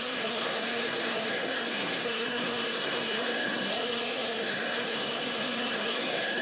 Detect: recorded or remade remade